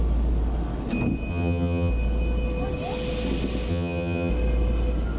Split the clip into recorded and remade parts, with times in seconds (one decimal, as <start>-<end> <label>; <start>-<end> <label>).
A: 0.0-1.3 recorded; 1.3-1.9 remade; 1.9-3.7 recorded; 3.7-4.3 remade; 4.3-5.2 recorded